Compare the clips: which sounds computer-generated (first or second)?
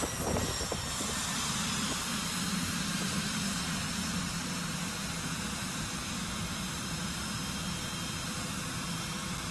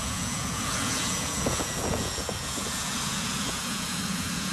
second